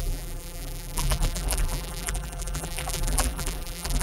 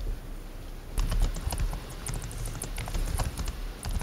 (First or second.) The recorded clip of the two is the second